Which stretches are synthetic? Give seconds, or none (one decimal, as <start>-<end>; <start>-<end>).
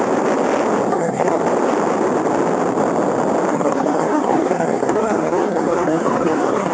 0.9-1.4; 3.5-6.7